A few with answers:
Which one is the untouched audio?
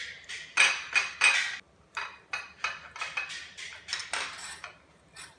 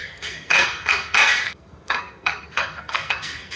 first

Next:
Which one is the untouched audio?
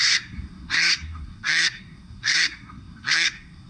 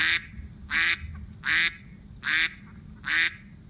second